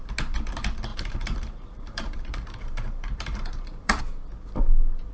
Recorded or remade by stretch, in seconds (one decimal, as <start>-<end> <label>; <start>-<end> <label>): 0.0-0.9 recorded; 0.9-4.0 remade; 4.0-5.1 recorded

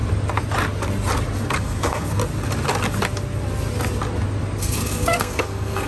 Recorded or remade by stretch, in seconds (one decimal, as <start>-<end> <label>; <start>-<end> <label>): 0.0-1.5 recorded; 1.5-2.2 remade; 2.2-4.6 recorded; 4.6-5.9 remade

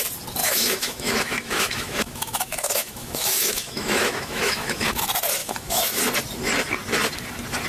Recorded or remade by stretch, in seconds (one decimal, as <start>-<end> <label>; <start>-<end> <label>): 0.0-0.4 recorded; 0.4-5.0 remade; 5.0-5.4 recorded; 5.4-6.0 remade; 6.0-7.7 recorded

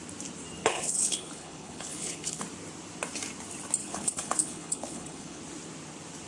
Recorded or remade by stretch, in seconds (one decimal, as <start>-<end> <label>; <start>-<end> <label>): 0.0-0.6 recorded; 0.6-2.4 remade; 2.4-3.8 recorded; 3.8-5.4 remade; 5.4-6.3 recorded

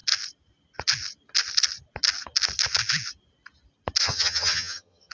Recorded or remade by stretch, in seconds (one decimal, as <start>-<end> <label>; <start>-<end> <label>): 0.0-4.0 recorded; 4.0-5.1 remade

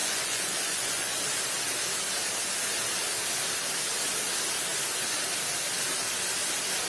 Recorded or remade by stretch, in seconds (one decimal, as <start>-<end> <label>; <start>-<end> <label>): 0.0-1.2 remade; 1.2-6.9 recorded